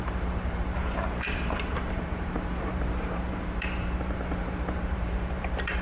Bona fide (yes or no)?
no